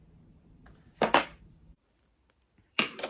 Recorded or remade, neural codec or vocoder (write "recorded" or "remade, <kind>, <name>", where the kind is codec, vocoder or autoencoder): remade, vocoder, BigVGAN v2